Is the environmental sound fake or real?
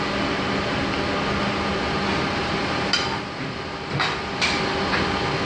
real